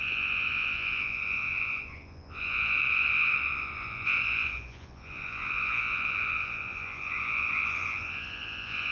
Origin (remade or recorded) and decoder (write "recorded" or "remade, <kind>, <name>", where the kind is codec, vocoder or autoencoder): remade, vocoder, Vocos